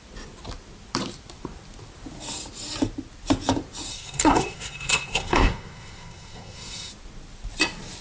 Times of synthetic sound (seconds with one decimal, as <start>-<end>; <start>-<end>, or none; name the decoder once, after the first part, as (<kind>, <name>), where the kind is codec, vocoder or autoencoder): 3.9-6.9 (codec, SNAC)